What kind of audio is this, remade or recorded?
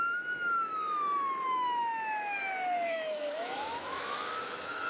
remade